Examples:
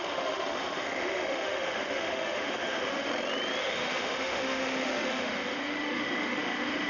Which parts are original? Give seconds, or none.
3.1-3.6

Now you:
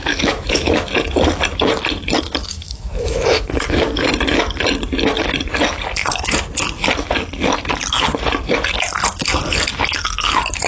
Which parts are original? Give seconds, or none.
0.8-2.4; 4.0-10.7